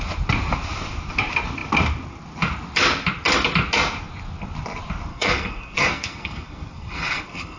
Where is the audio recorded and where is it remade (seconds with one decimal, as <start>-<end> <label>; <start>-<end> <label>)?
0.0-5.1 recorded; 5.1-7.6 remade